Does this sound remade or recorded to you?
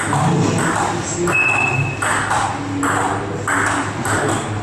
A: recorded